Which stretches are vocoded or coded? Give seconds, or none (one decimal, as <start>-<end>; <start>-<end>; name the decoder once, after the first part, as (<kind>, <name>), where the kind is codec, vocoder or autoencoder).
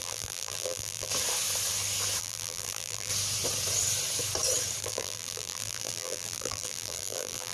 0.0-1.1 (vocoder, BigVGAN v2); 2.2-3.1; 4.8-7.5